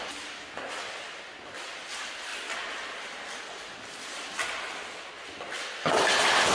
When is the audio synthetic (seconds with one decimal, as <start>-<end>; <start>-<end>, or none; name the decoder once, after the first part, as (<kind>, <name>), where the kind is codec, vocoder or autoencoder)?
none